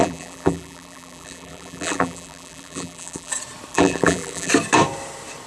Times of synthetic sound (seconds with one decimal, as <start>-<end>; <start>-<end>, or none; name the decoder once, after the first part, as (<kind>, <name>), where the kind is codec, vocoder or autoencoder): 0.0-3.3 (vocoder, BigVGAN v2); 3.7-4.5